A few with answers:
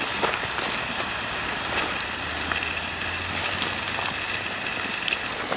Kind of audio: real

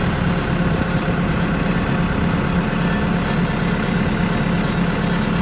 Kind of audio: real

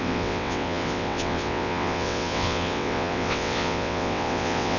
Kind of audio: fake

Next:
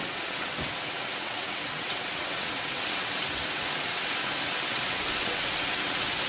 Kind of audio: fake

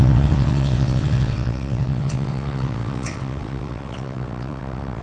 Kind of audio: fake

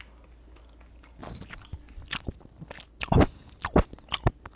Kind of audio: real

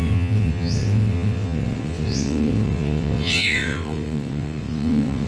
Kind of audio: fake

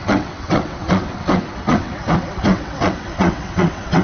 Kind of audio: fake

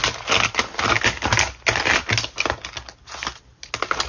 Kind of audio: real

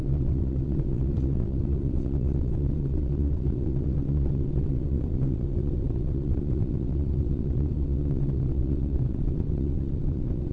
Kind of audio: fake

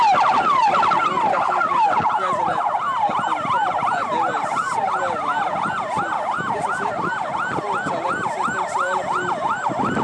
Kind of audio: real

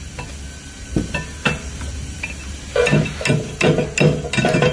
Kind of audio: real